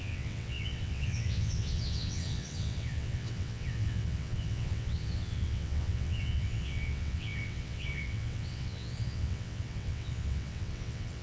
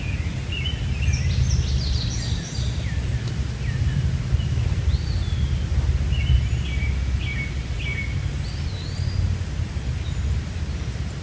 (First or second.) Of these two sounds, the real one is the second